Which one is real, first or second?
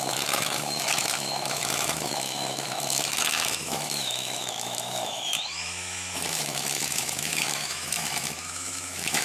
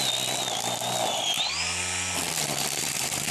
second